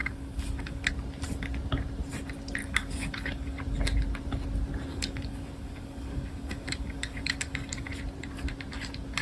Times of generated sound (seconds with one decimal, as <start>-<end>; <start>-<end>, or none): 0.0-0.9; 2.6-3.6; 4.9-7.9